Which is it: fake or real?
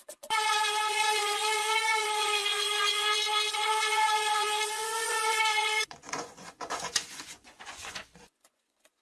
fake